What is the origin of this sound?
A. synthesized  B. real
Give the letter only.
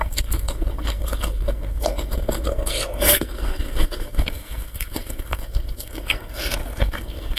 A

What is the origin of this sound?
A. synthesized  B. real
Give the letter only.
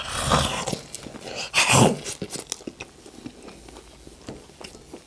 B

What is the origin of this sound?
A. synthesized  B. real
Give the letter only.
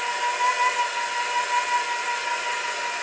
B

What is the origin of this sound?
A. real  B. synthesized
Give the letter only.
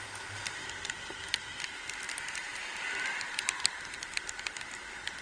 A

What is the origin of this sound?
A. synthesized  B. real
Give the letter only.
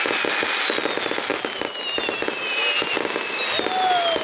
B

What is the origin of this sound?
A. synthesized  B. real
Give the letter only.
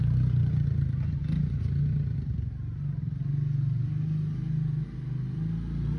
B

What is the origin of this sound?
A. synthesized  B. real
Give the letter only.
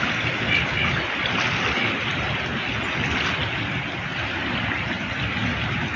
B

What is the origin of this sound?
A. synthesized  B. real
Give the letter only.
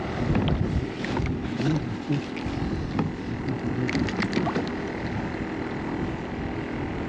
B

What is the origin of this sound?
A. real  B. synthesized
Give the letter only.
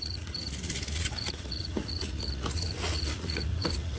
B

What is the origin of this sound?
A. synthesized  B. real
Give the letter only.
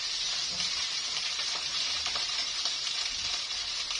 A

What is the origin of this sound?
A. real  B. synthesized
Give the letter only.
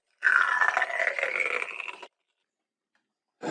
A